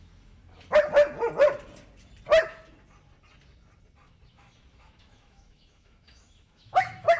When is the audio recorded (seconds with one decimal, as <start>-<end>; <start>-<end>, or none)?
0.4-4.3